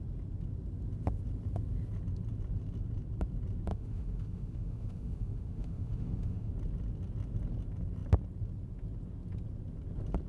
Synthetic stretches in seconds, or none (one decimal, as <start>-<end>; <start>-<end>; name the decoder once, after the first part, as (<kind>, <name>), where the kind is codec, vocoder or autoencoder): 3.7-6.5 (autoencoder, DAC-VAE)